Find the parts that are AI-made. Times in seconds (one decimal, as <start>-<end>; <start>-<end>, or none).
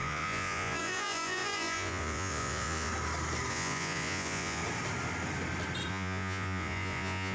0.0-2.9; 3.5-4.6; 5.9-7.3